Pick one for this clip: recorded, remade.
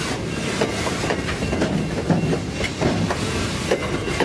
recorded